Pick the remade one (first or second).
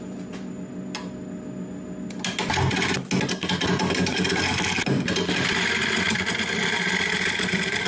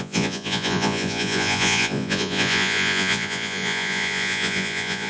second